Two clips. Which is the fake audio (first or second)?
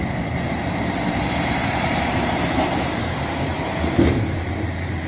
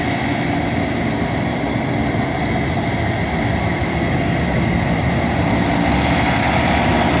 first